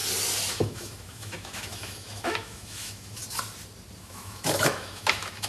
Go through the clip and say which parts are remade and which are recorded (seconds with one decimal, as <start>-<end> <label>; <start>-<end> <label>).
0.0-0.5 recorded; 0.5-3.2 remade; 3.2-4.0 recorded; 4.0-5.5 remade